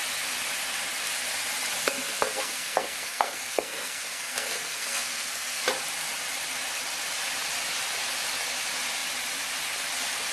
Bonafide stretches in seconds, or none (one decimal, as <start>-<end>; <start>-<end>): 0.0-1.8; 5.6-10.3